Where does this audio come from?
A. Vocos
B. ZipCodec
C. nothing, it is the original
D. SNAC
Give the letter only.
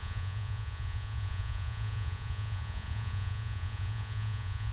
A